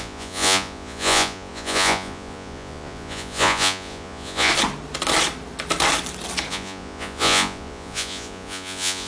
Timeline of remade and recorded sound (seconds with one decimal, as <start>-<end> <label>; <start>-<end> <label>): 0.0-4.5 remade; 4.5-6.5 recorded; 6.5-9.1 remade

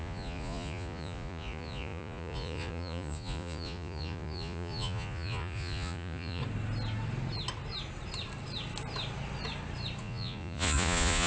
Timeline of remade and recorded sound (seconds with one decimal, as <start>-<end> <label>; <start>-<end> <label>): 0.0-6.4 remade; 6.4-10.0 recorded; 10.0-11.3 remade

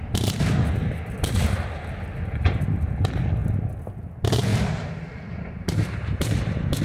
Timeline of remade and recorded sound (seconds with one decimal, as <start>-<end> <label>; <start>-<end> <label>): 0.0-4.5 recorded; 4.5-6.8 remade

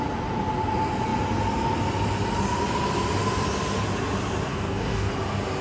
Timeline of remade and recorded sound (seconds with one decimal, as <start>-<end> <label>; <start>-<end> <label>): 0.0-4.5 recorded; 4.5-5.1 remade; 5.1-5.6 recorded

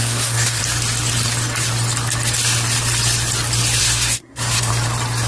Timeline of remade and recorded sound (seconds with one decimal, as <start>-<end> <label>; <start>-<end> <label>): 0.0-0.6 remade; 0.6-3.8 recorded; 3.8-4.7 remade; 4.7-5.3 recorded